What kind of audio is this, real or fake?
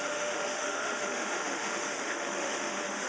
fake